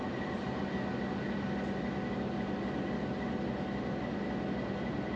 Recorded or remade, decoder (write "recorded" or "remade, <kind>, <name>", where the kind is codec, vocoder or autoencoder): recorded